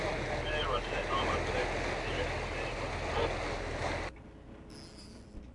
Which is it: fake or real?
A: real